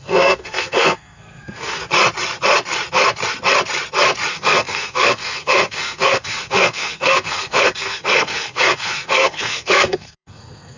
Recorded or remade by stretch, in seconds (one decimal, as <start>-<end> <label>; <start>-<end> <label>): 0.0-1.8 remade; 1.8-4.3 recorded; 4.3-10.8 remade